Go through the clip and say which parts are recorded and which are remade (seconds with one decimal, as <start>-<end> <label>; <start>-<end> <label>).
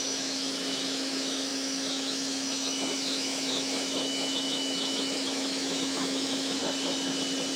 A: 0.0-6.6 remade; 6.6-7.6 recorded